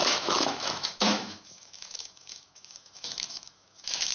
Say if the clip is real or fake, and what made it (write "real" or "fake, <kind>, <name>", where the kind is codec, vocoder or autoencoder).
fake, autoencoder, DAC-VAE